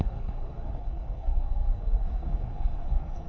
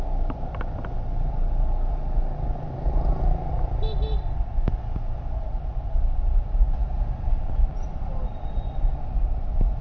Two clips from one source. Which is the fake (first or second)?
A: first